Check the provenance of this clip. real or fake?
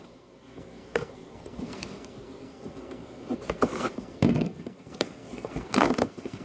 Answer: fake